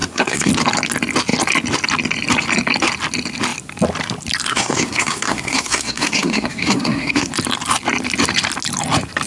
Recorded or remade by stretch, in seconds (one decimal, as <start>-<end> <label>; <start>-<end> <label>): 0.0-0.5 remade; 0.5-4.5 recorded; 4.5-7.3 remade; 7.3-9.3 recorded